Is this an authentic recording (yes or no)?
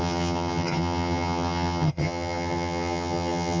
no